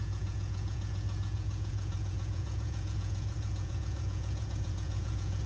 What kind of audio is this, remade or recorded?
remade